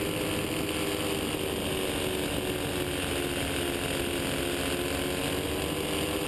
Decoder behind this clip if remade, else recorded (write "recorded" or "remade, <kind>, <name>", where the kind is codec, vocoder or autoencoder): recorded